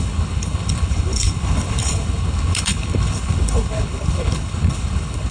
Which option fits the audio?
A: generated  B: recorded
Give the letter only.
A